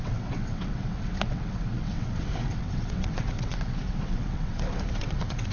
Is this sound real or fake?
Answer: fake